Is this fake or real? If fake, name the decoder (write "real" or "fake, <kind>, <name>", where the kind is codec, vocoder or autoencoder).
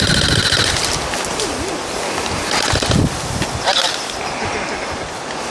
real